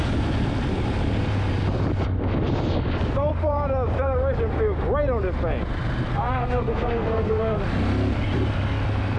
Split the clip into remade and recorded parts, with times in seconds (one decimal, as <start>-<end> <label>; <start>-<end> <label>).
0.0-6.1 recorded; 6.1-7.6 remade; 7.6-9.2 recorded